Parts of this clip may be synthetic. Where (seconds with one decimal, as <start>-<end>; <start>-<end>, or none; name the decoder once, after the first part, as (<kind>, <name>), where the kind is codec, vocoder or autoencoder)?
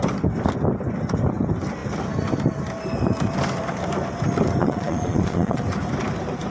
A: 4.6-5.6 (vocoder, Vocos)